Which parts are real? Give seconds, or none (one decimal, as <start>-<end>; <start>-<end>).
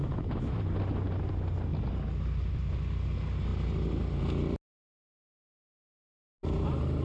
0.6-7.0